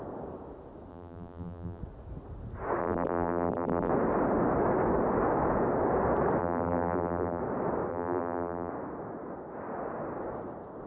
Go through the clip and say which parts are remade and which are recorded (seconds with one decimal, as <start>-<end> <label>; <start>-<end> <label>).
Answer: 0.0-0.9 recorded; 0.9-1.8 remade; 1.8-2.8 recorded; 2.8-3.9 remade; 3.9-6.4 recorded; 6.4-7.4 remade; 7.4-7.9 recorded; 7.9-8.7 remade; 8.7-10.9 recorded